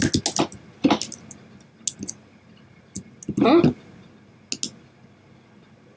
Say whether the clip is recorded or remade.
recorded